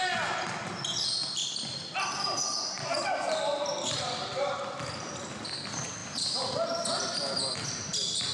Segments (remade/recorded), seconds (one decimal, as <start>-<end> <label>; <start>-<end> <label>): 0.0-1.2 recorded; 1.2-2.9 remade; 2.9-8.3 recorded